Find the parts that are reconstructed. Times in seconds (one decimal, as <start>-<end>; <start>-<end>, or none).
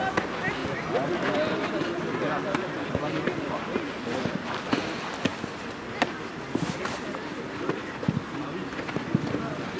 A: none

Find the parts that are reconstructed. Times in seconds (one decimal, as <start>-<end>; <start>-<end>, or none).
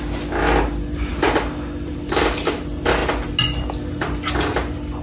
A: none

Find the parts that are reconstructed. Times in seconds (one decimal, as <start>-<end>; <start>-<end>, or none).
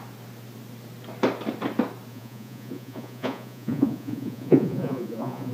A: 2.1-5.5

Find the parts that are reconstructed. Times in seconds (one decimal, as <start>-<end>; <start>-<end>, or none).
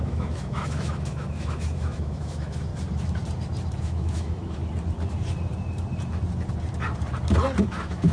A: 0.0-2.7; 3.8-4.6; 7.6-8.1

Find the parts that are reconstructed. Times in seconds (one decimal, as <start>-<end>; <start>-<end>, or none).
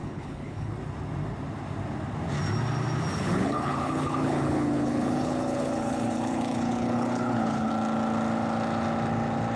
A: 0.0-0.7; 3.1-7.7